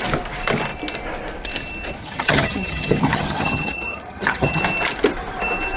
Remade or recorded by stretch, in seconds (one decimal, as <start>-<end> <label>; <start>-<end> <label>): 0.0-2.0 recorded; 2.0-4.6 remade; 4.6-5.8 recorded